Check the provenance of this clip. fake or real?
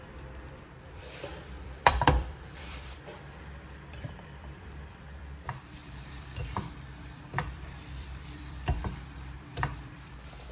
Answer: fake